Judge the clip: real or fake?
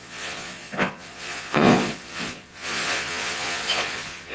fake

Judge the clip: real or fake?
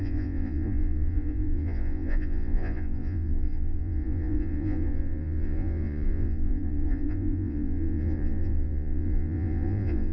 fake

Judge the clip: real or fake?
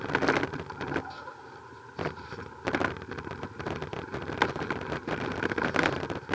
real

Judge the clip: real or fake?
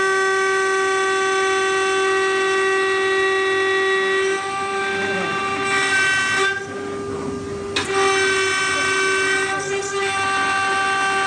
real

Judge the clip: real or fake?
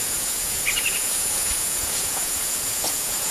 fake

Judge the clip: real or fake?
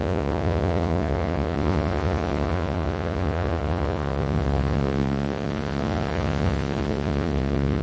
fake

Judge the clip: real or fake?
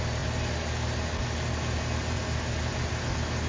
real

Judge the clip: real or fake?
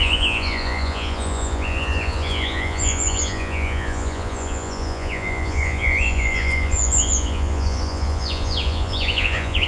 fake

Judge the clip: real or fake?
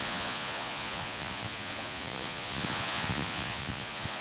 fake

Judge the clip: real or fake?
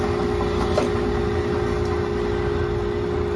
real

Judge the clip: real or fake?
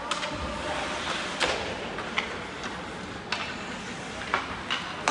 real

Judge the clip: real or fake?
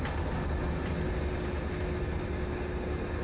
real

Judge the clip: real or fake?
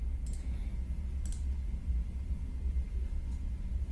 real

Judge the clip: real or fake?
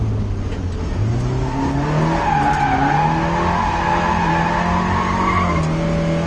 real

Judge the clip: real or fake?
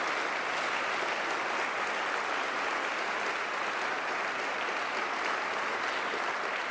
real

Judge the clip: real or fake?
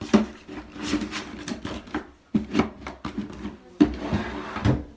real